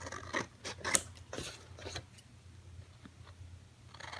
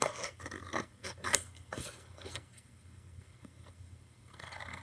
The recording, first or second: first